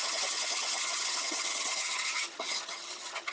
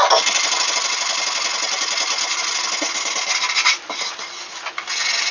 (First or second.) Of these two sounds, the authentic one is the second